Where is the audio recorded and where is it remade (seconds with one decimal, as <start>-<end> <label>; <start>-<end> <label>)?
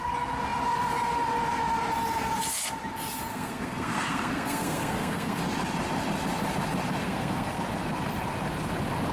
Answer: 0.0-3.3 recorded; 3.3-5.4 remade; 5.4-7.0 recorded; 7.0-7.6 remade; 7.6-9.1 recorded